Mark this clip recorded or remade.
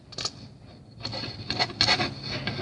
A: recorded